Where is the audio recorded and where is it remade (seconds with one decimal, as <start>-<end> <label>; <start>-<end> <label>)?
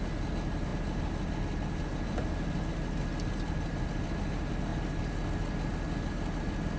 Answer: 0.0-6.8 recorded